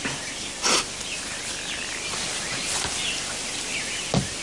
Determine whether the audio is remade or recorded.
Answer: recorded